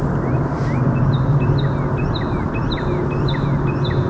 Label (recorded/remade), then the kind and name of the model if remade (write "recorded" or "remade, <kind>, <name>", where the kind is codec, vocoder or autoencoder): recorded